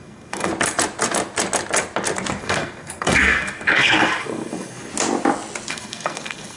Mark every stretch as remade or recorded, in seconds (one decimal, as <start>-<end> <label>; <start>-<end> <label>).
0.0-0.5 remade; 0.5-2.4 recorded; 2.4-4.9 remade; 4.9-5.7 recorded; 5.7-6.6 remade